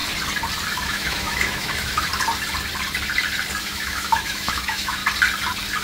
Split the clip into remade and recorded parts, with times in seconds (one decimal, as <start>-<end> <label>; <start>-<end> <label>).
0.0-0.7 recorded; 0.7-2.1 remade; 2.1-3.6 recorded; 3.6-5.0 remade; 5.0-5.8 recorded